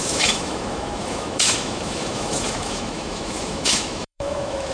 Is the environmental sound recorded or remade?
remade